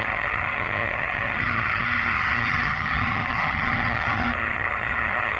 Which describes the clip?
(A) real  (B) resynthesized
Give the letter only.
B